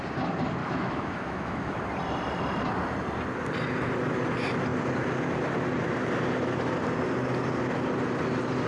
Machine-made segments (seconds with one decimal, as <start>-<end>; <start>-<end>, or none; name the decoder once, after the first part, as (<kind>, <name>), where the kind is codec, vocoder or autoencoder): 0.6-1.8 (autoencoder, DAC-VAE)